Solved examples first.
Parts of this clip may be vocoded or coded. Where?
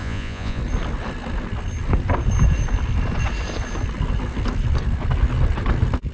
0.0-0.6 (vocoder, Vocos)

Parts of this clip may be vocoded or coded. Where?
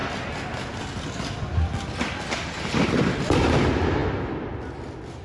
none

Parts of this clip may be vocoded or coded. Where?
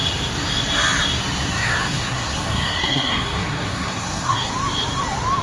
1.5-4.5 (codec, SNAC)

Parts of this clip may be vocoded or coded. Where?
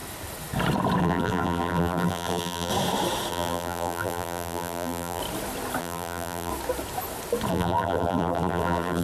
1.0-2.7 (vocoder, BigVGAN v2); 3.3-5.2; 5.8-6.5; 7.5-9.0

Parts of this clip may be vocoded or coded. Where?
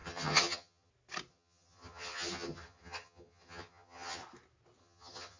0.0-0.9 (vocoder, HiFi-GAN); 1.3-4.2; 4.8-5.4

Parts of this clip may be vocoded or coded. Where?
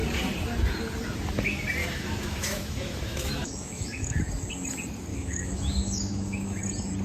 1.8-4.2 (autoencoder, DAC-VAE); 5.1-6.6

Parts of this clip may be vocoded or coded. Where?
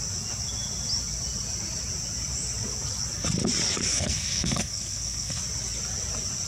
3.8-5.4 (codec, SNAC)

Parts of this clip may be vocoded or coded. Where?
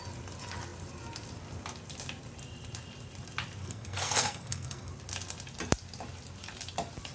3.6-4.9 (codec, SNAC)